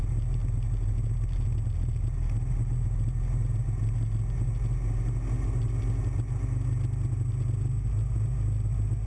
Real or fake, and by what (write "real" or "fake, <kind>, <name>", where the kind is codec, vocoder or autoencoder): real